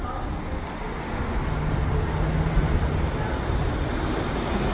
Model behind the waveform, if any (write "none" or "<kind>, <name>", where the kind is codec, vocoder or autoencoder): none